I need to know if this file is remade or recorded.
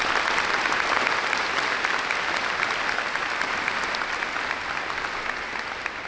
recorded